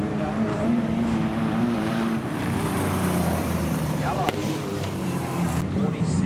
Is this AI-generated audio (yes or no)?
yes